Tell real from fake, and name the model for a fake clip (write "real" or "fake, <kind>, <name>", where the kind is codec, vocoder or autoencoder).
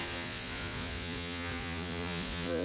fake, vocoder, Vocos